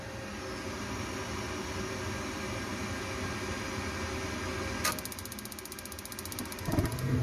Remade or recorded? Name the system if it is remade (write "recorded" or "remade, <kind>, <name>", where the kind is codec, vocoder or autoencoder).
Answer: recorded